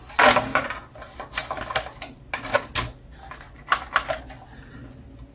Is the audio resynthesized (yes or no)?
no